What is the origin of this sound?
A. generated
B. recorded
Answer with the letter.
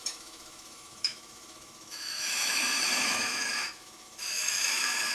A